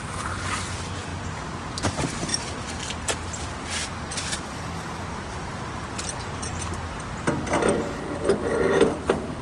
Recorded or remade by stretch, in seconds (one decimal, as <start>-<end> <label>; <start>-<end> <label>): 0.0-9.4 recorded